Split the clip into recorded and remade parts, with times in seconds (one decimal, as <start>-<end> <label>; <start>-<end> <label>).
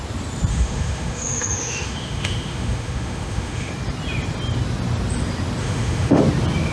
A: 0.0-0.5 recorded; 0.5-3.7 remade; 3.7-5.6 recorded; 5.6-6.2 remade; 6.2-6.7 recorded